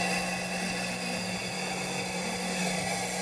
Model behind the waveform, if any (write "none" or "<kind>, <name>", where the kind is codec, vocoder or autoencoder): none